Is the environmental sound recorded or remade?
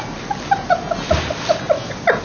recorded